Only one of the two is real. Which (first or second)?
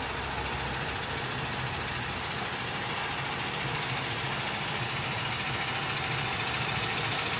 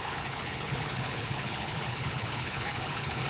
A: first